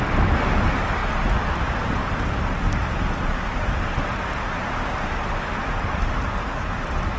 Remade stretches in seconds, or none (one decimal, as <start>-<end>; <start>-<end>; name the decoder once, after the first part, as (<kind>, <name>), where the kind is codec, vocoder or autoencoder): none

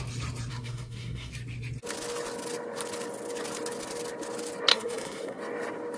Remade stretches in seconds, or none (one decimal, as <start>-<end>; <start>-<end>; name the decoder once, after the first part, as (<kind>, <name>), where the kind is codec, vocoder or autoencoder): 0.5-1.3 (codec, SNAC); 4.7-5.4

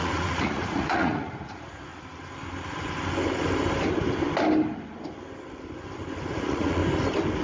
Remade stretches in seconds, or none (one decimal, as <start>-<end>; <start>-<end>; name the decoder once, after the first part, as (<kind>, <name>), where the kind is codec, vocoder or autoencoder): 0.0-1.9 (vocoder, Vocos); 6.3-6.8

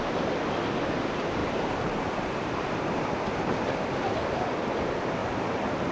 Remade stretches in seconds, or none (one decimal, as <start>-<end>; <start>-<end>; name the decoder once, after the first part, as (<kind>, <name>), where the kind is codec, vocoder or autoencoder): 1.4-3.4 (vocoder, BigVGAN v2); 5.2-5.9

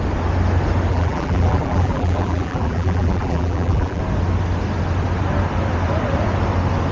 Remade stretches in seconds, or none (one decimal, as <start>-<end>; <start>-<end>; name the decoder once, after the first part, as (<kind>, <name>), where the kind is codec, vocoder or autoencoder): 0.9-4.0 (vocoder, BigVGAN v2)